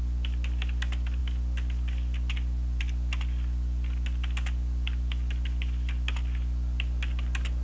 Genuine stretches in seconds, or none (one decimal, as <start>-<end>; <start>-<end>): 0.0-7.6